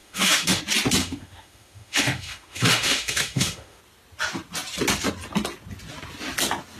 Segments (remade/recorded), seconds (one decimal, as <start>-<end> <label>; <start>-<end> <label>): 0.0-0.6 remade; 0.6-1.0 recorded; 1.0-3.8 remade; 3.8-6.8 recorded